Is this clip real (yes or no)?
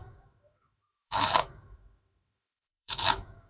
no